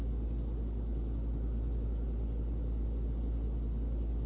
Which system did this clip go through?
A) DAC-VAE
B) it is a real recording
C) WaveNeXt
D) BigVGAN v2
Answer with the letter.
B